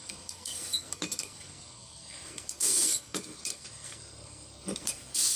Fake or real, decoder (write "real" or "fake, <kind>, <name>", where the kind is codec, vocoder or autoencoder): fake, codec, SNAC